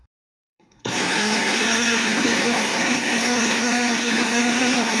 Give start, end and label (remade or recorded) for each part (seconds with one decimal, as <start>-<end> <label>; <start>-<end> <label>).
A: 0.0-5.0 remade